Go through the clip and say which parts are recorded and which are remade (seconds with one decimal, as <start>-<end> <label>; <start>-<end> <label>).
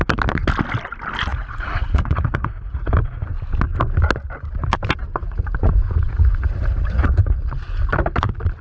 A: 0.0-1.3 recorded; 1.3-2.9 remade; 2.9-5.2 recorded; 5.2-7.2 remade; 7.2-8.6 recorded